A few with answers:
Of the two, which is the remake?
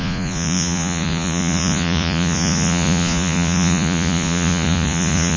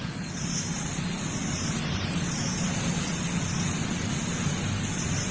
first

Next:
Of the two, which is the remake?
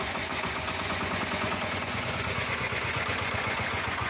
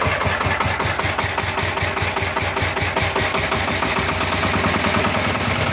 first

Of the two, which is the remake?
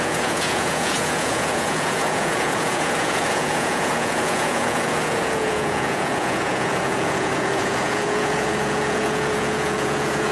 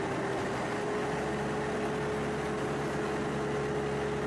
first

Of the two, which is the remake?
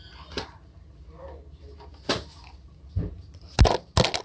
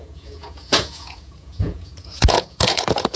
second